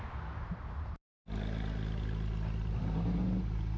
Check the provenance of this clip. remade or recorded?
recorded